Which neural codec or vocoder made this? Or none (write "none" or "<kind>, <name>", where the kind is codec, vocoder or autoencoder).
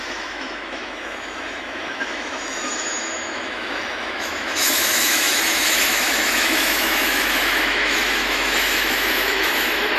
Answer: autoencoder, DAC-VAE